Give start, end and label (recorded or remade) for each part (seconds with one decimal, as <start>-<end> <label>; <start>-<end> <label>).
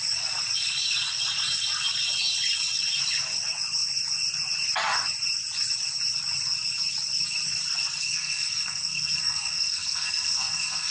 0.0-8.0 recorded; 8.0-10.9 remade